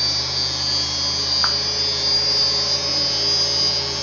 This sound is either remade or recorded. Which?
recorded